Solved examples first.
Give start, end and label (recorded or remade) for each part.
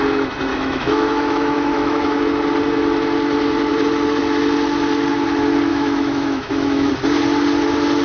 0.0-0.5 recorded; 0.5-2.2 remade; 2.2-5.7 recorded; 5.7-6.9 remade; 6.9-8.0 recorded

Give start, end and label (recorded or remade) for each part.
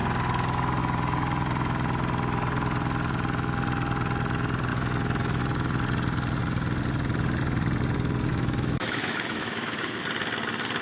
0.0-4.7 recorded; 4.7-5.4 remade; 5.4-8.3 recorded; 8.3-10.0 remade; 10.0-10.8 recorded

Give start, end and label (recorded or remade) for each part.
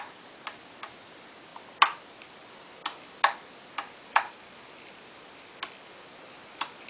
0.0-6.9 recorded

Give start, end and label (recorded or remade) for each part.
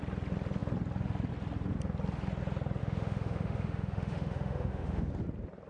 0.0-2.8 recorded; 2.8-5.1 remade; 5.1-5.7 recorded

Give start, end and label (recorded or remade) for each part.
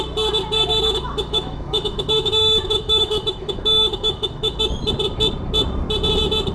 0.0-0.7 recorded; 0.7-4.6 remade; 4.6-6.5 recorded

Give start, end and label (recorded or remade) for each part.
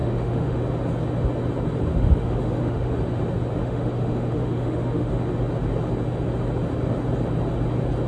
0.0-0.6 remade; 0.6-1.9 recorded; 1.9-2.9 remade; 2.9-3.6 recorded; 3.6-5.1 remade; 5.1-8.1 recorded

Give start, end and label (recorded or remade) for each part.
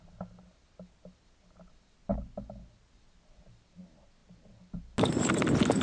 0.0-5.8 recorded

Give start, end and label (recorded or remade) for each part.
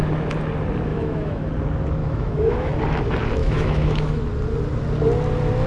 0.0-0.9 recorded; 0.9-1.5 remade; 1.5-2.0 recorded; 2.0-2.7 remade; 2.7-3.4 recorded; 3.4-4.2 remade; 4.2-5.7 recorded